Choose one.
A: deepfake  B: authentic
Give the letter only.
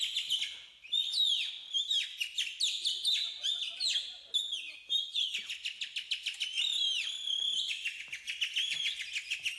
B